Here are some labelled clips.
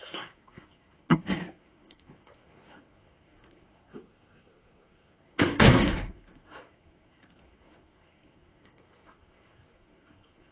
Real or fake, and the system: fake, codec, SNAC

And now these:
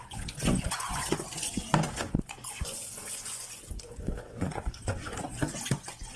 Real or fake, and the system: fake, vocoder, Vocos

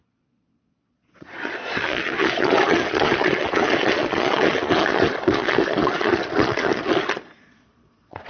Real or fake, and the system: fake, vocoder, Vocos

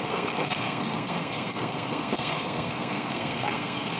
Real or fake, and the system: fake, codec, SNAC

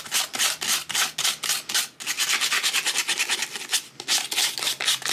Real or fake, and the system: real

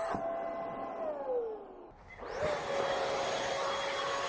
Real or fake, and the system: real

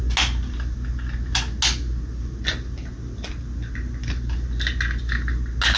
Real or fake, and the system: real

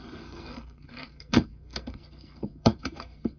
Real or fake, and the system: fake, codec, SNAC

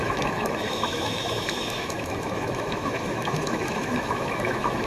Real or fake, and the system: fake, autoencoder, DAC-VAE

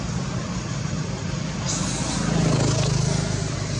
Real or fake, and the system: real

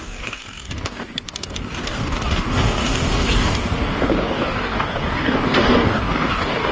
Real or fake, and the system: fake, codec, DAC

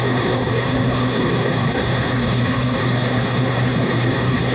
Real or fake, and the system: fake, codec, SNAC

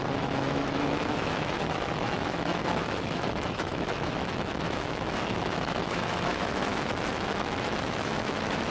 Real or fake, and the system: fake, autoencoder, DAC-VAE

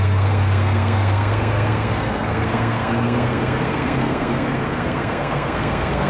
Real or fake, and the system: fake, codec, SNAC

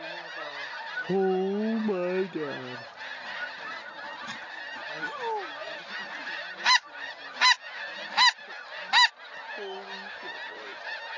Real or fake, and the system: real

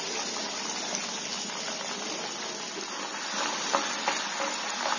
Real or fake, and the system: real